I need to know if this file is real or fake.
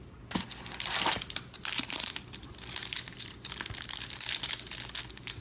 real